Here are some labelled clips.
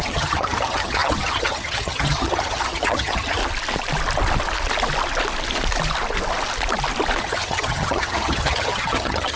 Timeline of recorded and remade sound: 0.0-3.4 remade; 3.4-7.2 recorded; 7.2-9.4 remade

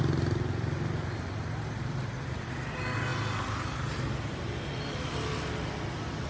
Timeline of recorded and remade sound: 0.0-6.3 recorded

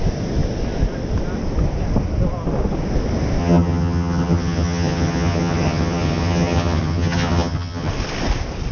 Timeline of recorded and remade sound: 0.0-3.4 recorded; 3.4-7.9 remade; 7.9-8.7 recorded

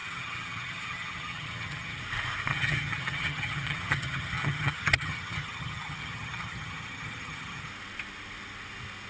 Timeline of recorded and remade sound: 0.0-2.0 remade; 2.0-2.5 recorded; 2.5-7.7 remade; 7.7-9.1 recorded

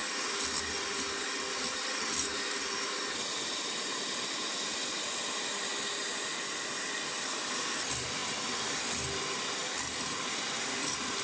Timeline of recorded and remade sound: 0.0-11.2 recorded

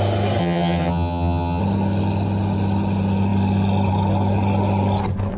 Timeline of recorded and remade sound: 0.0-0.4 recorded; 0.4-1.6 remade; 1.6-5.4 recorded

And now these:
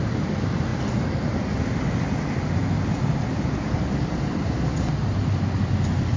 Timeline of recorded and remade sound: 0.0-6.2 recorded